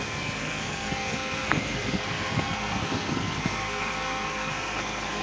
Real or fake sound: fake